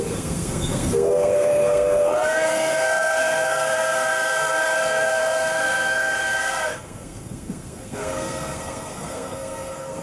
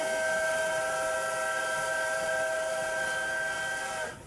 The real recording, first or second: second